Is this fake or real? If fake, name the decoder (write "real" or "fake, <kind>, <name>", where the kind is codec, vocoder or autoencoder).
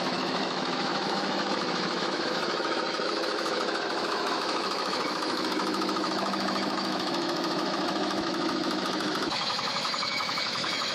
fake, autoencoder, DAC-VAE